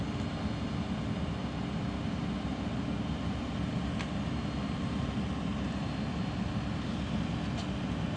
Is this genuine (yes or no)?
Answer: yes